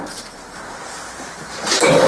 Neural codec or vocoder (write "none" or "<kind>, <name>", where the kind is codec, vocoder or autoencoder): vocoder, BigVGAN v2